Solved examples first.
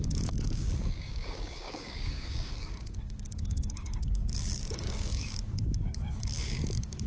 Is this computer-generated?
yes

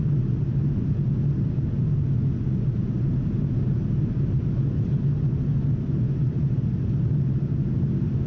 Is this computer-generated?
no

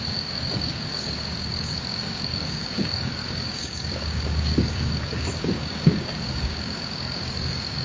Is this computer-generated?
yes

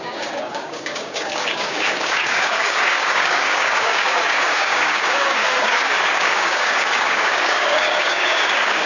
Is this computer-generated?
yes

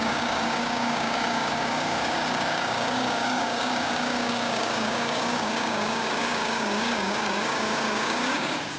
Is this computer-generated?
yes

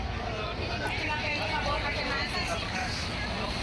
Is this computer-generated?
no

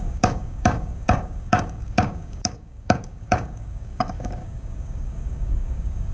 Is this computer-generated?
yes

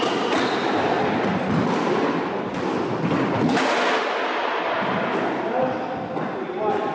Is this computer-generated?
no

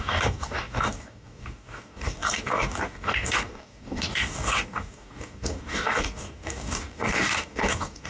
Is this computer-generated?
yes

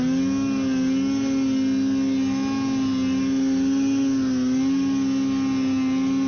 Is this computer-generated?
no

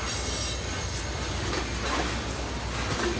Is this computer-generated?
no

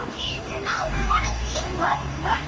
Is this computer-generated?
yes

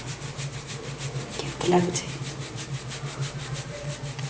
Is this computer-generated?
no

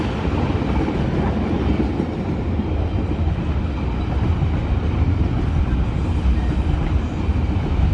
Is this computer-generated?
no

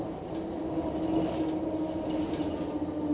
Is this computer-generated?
no